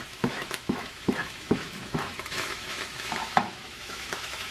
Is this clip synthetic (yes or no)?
yes